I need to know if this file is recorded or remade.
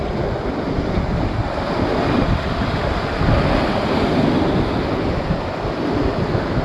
recorded